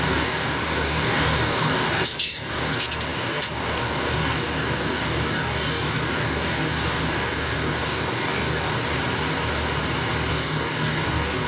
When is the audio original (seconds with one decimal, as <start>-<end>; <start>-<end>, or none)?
8.7-10.3